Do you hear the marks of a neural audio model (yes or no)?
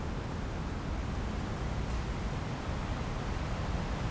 no